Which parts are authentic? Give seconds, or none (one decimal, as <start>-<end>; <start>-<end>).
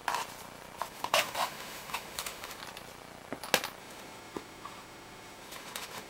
0.0-0.9; 2.6-3.8